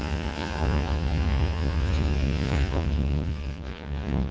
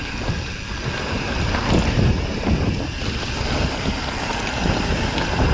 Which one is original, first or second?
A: second